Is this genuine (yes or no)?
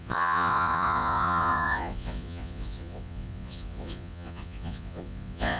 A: no